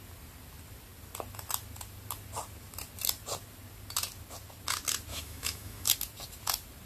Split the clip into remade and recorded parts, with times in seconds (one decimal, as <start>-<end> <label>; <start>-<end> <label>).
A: 0.0-5.1 recorded; 5.1-5.9 remade; 5.9-6.9 recorded